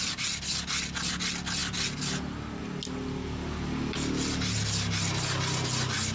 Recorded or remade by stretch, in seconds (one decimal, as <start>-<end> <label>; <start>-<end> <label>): 0.0-6.1 recorded